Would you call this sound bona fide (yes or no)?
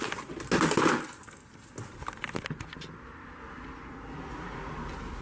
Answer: yes